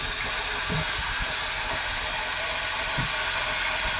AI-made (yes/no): no